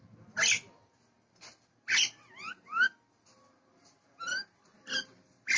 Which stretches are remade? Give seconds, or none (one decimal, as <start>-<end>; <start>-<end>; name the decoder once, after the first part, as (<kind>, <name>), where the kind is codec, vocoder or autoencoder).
none